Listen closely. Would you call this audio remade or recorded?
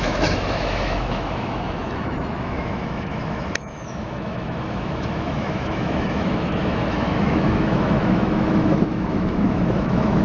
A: remade